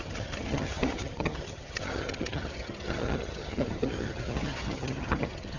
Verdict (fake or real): fake